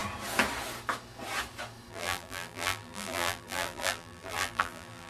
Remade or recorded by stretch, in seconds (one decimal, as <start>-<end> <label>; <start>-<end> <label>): 0.0-1.9 recorded; 1.9-5.1 remade